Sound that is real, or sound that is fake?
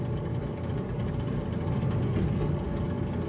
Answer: real